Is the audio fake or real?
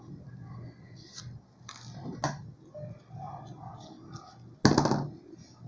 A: real